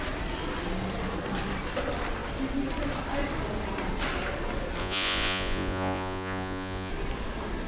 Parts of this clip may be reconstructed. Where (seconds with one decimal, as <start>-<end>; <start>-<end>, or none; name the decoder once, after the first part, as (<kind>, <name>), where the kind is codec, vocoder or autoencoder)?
4.8-6.9 (vocoder, Vocos)